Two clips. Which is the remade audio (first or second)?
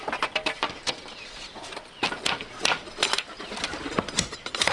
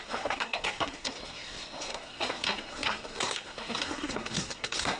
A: second